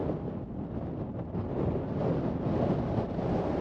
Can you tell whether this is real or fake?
real